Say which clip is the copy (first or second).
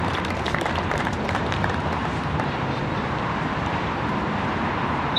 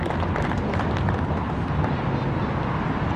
first